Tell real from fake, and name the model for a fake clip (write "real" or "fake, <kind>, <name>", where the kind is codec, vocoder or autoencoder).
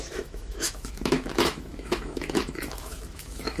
fake, autoencoder, DAC-VAE